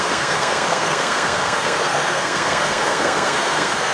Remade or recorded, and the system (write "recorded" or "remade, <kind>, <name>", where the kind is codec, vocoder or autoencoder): remade, codec, SNAC